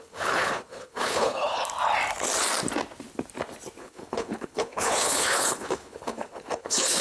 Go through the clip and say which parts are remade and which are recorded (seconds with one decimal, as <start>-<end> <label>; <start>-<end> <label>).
0.0-1.6 remade; 1.6-3.8 recorded; 3.8-7.0 remade